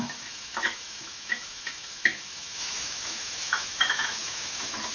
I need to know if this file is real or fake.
fake